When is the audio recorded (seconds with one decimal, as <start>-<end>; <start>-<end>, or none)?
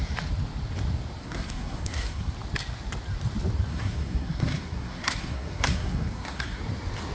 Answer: 0.0-1.2; 2.3-3.7; 6.6-7.1